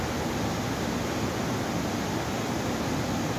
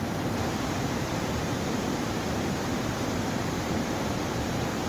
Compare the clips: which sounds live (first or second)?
first